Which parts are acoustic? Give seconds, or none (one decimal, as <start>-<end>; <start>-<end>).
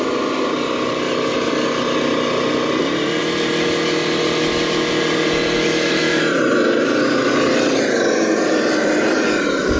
0.0-9.8